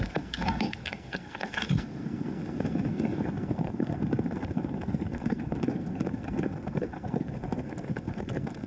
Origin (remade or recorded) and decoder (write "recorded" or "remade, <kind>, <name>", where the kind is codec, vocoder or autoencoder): remade, codec, SNAC